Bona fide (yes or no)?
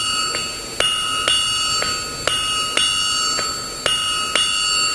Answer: yes